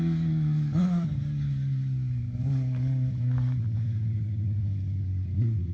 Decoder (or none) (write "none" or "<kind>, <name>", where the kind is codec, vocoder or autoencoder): codec, DAC